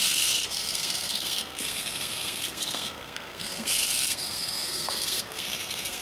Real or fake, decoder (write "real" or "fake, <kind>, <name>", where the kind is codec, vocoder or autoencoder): fake, codec, SNAC